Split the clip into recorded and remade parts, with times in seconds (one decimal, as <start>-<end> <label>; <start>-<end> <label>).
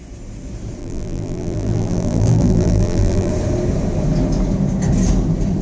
0.0-0.8 recorded; 0.8-3.3 remade; 3.3-5.6 recorded